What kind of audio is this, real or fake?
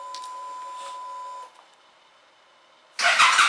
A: real